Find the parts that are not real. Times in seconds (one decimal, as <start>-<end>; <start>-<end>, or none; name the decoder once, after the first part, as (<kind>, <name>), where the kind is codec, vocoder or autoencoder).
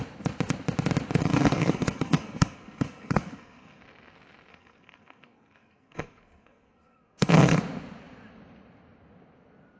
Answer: 1.2-3.8 (codec, SNAC); 4.5-7.6